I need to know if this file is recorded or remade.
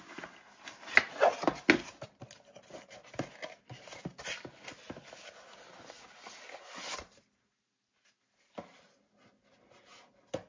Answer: recorded